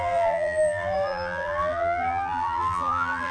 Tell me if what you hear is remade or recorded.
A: remade